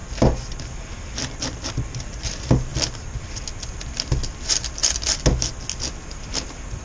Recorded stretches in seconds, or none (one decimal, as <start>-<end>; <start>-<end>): 0.0-6.8